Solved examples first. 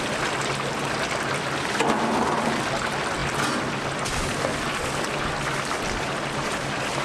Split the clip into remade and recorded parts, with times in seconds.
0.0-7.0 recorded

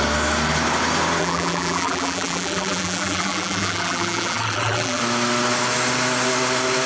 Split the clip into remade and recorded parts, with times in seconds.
0.0-1.2 recorded; 1.2-5.0 remade; 5.0-6.9 recorded

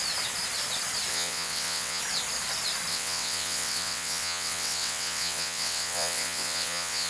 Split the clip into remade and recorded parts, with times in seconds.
0.0-1.1 recorded; 1.1-2.0 remade; 2.0-2.9 recorded; 2.9-7.1 remade

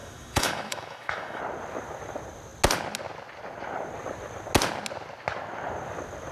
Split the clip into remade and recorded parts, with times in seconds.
0.0-1.4 remade; 1.4-6.3 recorded

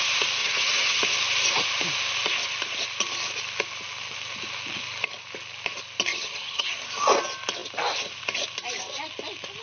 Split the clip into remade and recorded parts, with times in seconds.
0.0-0.4 recorded; 0.4-1.0 remade; 1.0-6.1 recorded; 6.1-6.8 remade; 6.8-9.6 recorded